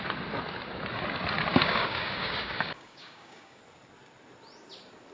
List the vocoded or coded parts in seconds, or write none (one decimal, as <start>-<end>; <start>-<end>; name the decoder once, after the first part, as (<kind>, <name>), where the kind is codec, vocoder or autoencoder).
1.5-3.6 (codec, DAC)